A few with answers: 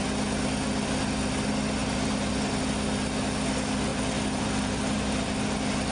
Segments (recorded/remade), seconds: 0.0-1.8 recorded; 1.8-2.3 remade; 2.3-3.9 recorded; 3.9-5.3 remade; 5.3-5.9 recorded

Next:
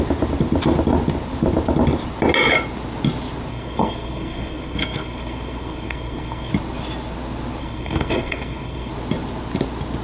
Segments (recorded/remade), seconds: 0.0-3.5 recorded; 3.5-6.5 remade; 6.5-7.6 recorded; 7.6-8.9 remade; 8.9-10.0 recorded

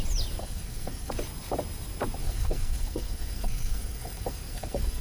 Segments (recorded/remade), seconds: 0.0-0.4 recorded; 0.4-1.1 remade; 1.1-2.2 recorded; 2.2-5.0 remade

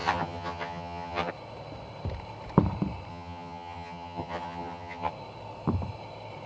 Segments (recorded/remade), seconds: 0.0-1.3 remade; 1.3-3.1 recorded; 3.1-5.1 remade; 5.1-6.5 recorded

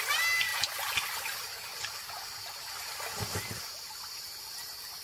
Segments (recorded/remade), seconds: 0.0-5.0 recorded

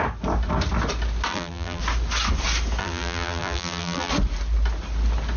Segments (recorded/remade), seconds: 0.0-1.3 recorded; 1.3-1.8 remade; 1.8-2.8 recorded; 2.8-4.1 remade; 4.1-5.4 recorded